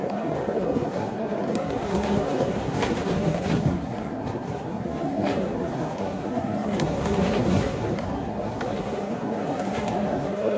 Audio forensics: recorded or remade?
remade